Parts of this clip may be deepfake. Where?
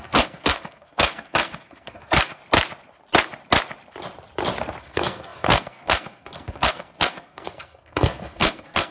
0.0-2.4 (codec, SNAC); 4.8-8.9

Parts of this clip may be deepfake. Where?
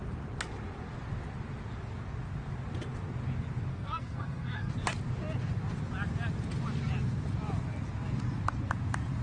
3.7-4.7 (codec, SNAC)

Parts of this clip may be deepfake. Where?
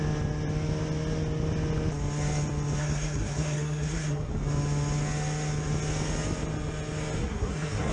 2.8-4.3 (codec, SNAC); 7.2-7.9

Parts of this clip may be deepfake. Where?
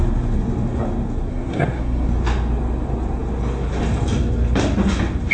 1.3-2.1 (codec, SNAC)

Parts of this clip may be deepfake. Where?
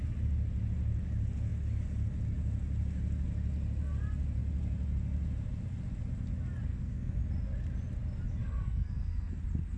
6.7-7.2 (codec, SNAC); 8.4-9.4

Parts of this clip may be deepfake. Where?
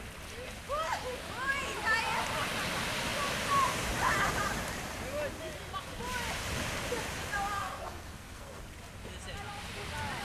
7.6-8.6 (codec, SNAC)